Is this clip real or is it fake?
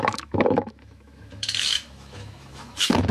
fake